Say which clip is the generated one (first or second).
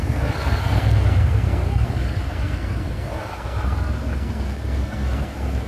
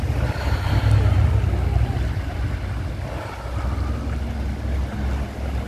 first